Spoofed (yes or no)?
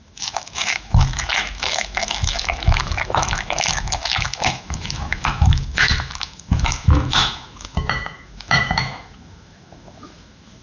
yes